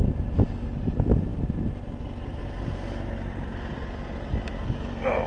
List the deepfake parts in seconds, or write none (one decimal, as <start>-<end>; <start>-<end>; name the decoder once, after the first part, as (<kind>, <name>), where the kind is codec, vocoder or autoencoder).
none